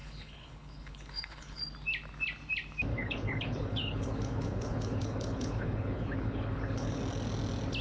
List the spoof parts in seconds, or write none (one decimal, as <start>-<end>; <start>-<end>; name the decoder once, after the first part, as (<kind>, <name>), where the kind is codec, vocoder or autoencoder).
0.0-1.6 (codec, HILCodec); 2.9-7.0